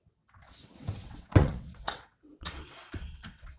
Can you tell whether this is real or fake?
fake